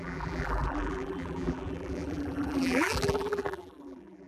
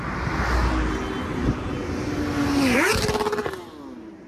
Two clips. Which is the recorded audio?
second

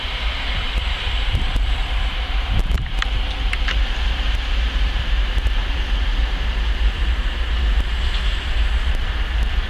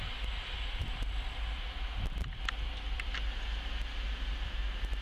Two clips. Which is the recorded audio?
second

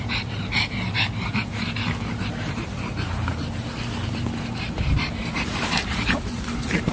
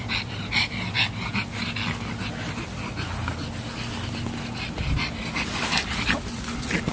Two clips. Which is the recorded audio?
second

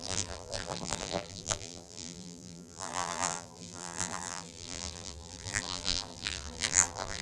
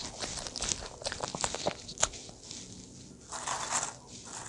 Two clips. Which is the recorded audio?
second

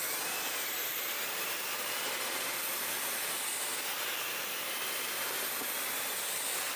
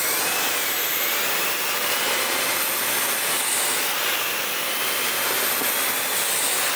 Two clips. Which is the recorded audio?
second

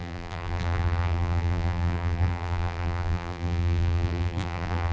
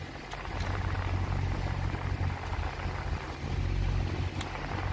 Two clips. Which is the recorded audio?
second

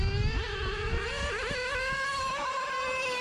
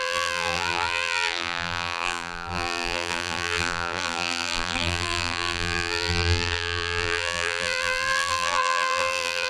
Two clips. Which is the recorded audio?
first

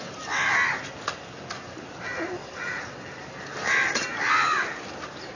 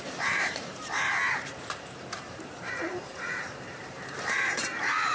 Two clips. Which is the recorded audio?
first